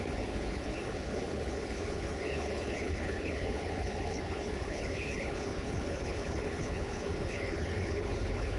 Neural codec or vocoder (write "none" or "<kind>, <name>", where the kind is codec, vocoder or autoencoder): codec, HILCodec